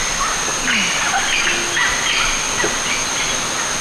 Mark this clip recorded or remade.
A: recorded